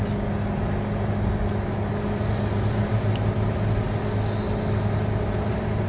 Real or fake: real